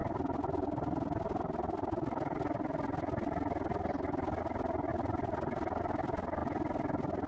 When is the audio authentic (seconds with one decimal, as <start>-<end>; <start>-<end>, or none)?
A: 0.0-4.9; 5.8-7.3